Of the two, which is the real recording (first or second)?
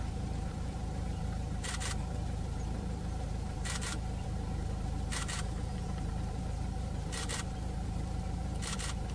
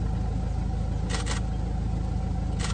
second